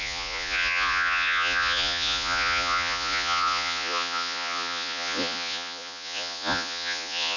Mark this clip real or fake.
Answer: fake